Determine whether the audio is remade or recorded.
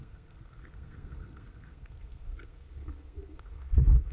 remade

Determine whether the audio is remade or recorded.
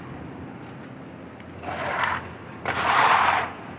recorded